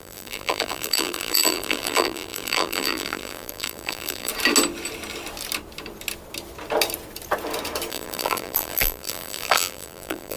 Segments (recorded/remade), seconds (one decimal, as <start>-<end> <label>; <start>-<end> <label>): 0.0-4.3 remade; 4.3-7.9 recorded; 7.9-10.4 remade